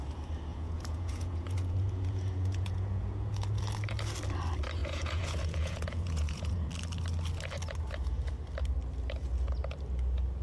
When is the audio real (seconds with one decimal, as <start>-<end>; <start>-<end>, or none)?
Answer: 0.0-0.5; 3.6-4.8; 6.7-10.4